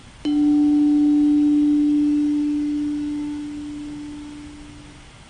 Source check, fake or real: real